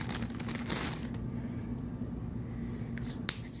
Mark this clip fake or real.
real